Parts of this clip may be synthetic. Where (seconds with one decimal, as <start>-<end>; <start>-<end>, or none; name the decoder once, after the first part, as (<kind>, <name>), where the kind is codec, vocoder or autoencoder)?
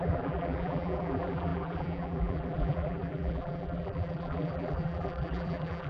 0.0-5.9 (vocoder, BigVGAN v2)